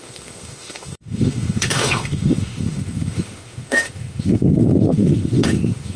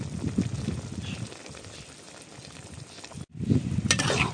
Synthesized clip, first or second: first